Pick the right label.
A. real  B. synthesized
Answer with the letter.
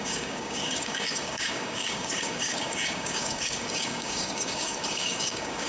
B